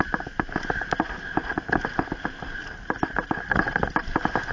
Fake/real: real